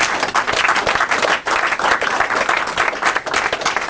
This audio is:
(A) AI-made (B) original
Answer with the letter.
B